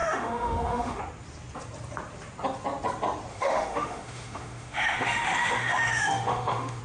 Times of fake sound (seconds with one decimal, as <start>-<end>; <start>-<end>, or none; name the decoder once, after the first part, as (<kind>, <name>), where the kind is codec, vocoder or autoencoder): 0.0-1.0 (autoencoder, DAC-VAE); 3.3-6.8